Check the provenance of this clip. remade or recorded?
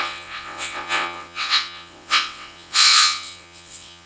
remade